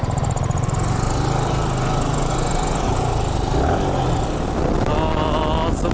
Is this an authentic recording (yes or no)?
yes